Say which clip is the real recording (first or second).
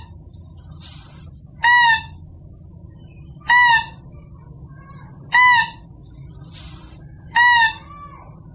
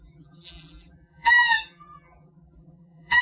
first